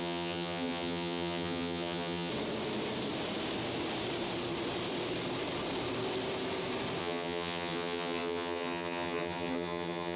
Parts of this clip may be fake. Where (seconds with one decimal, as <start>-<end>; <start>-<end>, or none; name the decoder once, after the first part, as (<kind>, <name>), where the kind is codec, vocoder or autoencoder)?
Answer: 0.0-2.3 (vocoder, HiFi-GAN); 7.0-10.2